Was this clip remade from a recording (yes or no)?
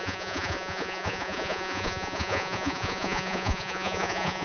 yes